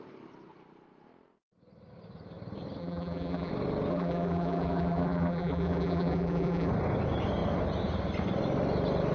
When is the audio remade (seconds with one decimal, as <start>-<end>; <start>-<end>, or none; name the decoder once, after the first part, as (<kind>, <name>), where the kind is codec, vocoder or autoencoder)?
2.8-3.5 (vocoder, BigVGAN v2); 3.9-6.7